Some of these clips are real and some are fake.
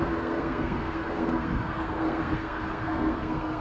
fake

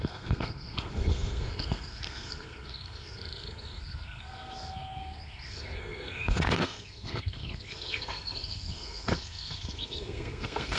fake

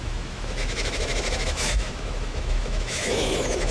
fake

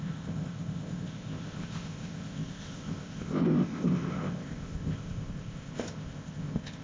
fake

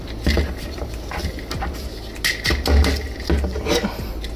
real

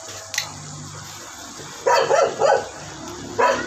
real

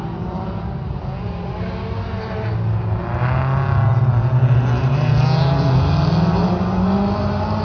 real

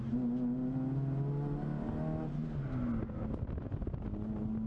real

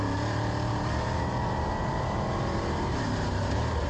fake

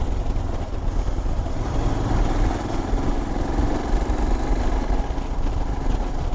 real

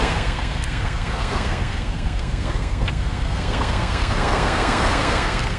fake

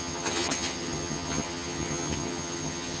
fake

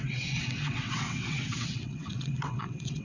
fake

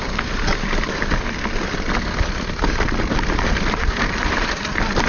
real